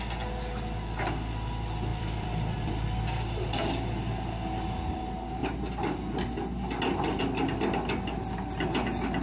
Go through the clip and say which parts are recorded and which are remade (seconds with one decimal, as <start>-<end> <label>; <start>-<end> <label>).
0.0-1.9 recorded; 1.9-5.0 remade; 5.0-9.2 recorded